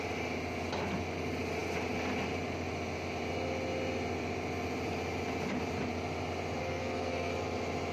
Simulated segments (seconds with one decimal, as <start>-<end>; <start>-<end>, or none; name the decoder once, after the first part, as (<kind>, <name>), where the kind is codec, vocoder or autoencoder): 6.6-7.3 (codec, SNAC)